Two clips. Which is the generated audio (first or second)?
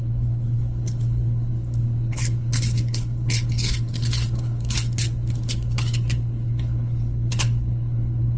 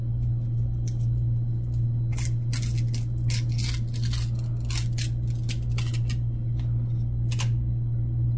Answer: first